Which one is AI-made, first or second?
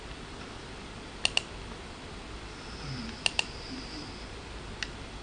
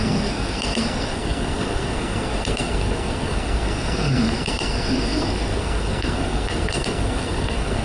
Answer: second